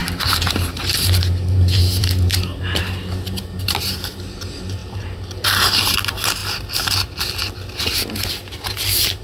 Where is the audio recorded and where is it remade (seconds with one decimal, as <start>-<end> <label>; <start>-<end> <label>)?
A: 0.0-6.4 remade; 6.4-7.9 recorded; 7.9-9.2 remade